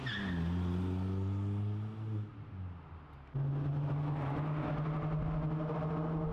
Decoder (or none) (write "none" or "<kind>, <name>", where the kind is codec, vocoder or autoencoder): none